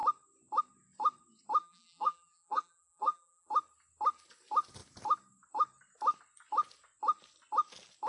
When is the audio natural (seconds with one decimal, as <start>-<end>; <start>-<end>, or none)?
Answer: 0.0-1.6; 3.5-8.1